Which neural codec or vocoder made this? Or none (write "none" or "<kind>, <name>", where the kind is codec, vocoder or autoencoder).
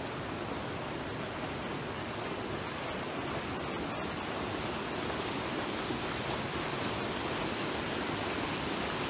none